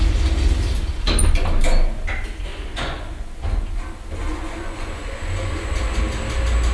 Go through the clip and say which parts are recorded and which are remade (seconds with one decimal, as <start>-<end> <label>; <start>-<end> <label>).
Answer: 0.0-2.5 recorded; 2.5-3.8 remade; 3.8-4.2 recorded; 4.2-6.0 remade; 6.0-6.7 recorded